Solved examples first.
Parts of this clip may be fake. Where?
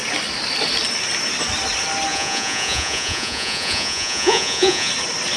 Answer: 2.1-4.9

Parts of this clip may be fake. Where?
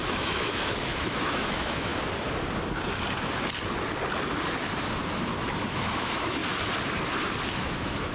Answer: 0.0-1.9; 5.6-6.4; 7.6-8.1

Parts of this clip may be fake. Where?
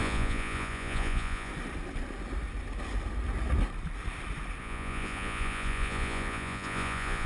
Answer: 0.0-1.5; 4.6-7.3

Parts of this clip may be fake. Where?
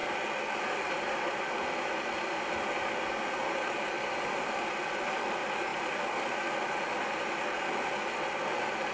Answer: none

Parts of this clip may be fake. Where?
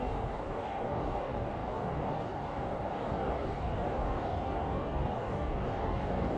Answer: 0.0-6.4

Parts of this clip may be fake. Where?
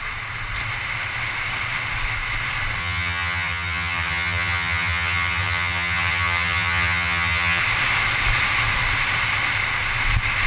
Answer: 2.8-7.6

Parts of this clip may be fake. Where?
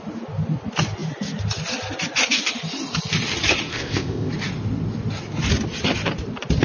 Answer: 3.7-4.3